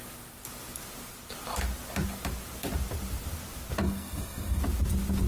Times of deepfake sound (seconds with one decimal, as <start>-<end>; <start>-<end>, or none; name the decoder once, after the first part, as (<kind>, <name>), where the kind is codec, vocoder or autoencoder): 3.8-4.6 (codec, SNAC)